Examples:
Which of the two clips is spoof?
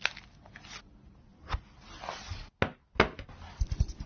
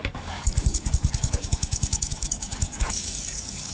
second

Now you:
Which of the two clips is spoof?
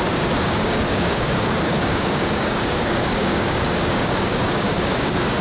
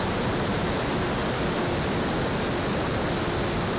first